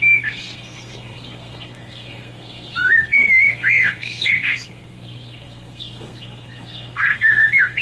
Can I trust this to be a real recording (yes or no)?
no